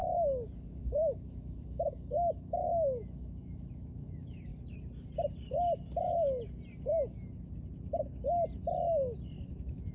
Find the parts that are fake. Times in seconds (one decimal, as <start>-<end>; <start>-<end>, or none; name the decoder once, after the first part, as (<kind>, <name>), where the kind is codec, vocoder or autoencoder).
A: 0.7-4.5 (autoencoder, DAC-VAE); 9.5-9.9